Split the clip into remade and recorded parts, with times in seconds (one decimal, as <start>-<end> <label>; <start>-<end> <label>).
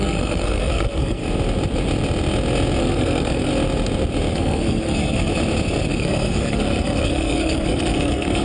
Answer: 0.0-1.2 remade; 1.2-2.8 recorded; 2.8-3.5 remade; 3.5-4.3 recorded; 4.3-5.3 remade; 5.3-5.9 recorded; 5.9-8.4 remade